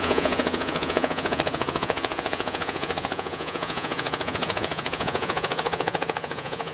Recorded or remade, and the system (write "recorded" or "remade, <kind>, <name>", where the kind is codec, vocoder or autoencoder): remade, vocoder, Vocos